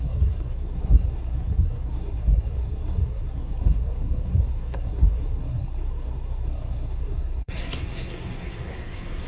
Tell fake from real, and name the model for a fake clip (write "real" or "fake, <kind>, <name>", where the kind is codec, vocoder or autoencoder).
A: fake, codec, SNAC